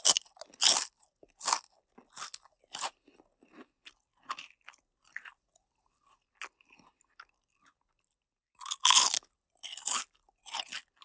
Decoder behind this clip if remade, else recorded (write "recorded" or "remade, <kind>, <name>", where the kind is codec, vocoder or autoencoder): recorded